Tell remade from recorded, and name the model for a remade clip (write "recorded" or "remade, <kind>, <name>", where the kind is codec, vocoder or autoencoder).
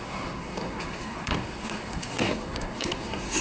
remade, codec, SNAC